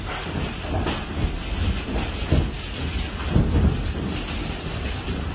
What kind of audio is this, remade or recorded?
recorded